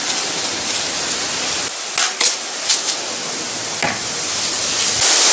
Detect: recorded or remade recorded